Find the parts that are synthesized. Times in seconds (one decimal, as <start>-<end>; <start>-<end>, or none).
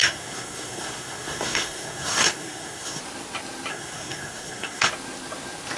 0.0-3.0; 3.7-4.9